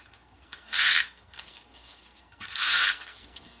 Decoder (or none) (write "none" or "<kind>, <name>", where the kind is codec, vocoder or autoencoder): codec, SNAC